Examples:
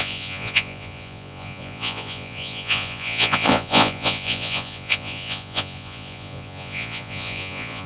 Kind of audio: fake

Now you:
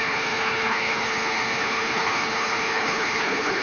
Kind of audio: fake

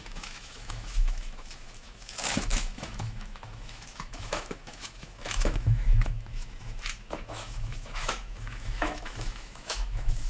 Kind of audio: fake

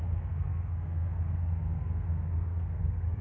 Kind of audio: fake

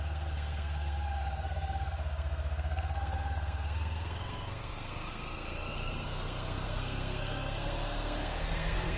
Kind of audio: fake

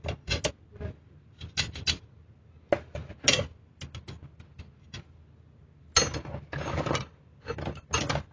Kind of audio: real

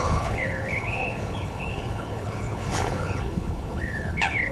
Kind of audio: fake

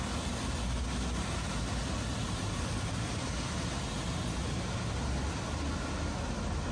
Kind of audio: real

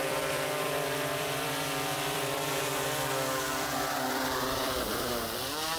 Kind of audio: fake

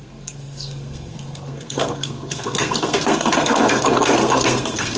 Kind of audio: fake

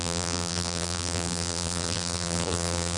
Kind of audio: fake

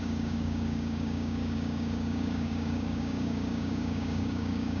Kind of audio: fake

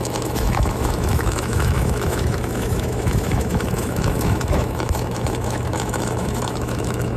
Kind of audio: fake